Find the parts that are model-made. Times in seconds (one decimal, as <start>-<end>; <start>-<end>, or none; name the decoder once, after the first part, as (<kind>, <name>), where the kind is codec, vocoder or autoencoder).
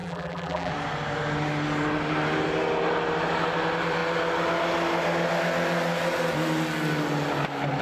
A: 0.0-0.7 (vocoder, BigVGAN v2)